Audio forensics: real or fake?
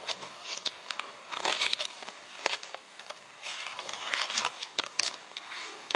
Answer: fake